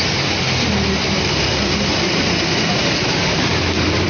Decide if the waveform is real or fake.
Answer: real